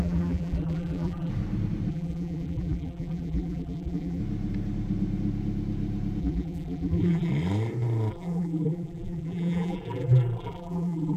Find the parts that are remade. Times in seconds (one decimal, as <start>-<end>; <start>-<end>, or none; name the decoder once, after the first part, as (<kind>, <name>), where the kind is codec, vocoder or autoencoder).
0.0-1.3 (vocoder, BigVGAN v2); 1.9-4.2; 6.2-7.3; 8.1-11.2